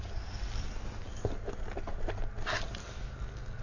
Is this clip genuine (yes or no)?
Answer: yes